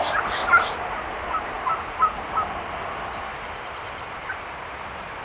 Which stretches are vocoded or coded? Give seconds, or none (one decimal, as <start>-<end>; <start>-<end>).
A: none